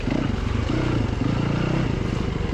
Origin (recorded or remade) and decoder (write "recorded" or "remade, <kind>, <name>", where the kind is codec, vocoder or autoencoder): recorded